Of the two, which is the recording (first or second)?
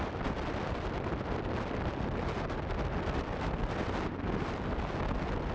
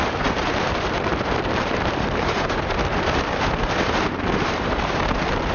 first